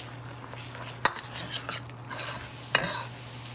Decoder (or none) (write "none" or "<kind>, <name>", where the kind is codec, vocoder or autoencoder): none